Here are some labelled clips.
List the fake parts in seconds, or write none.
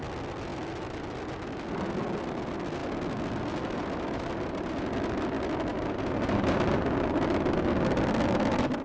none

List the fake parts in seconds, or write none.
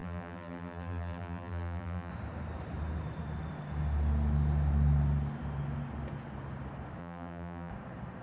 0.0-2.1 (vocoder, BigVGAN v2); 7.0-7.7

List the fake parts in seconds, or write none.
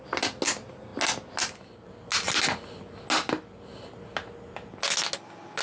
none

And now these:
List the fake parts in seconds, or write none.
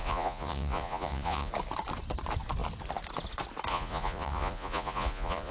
0.0-1.5 (vocoder, Vocos); 3.7-5.5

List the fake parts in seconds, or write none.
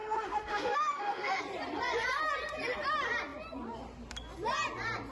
0.0-1.4 (autoencoder, DAC-VAE)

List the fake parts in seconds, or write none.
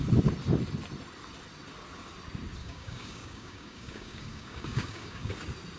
2.6-5.3 (codec, DAC)